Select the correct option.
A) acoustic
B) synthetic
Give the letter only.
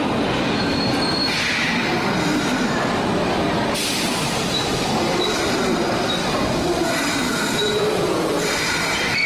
B